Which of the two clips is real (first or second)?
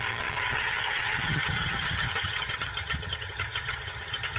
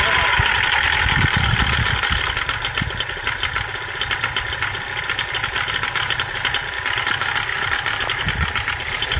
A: second